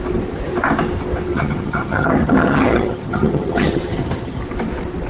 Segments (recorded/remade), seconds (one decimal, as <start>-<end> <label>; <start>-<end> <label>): 0.0-1.3 recorded; 1.3-4.4 remade; 4.4-5.1 recorded